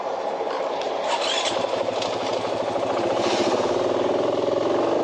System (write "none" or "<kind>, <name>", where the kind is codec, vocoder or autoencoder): none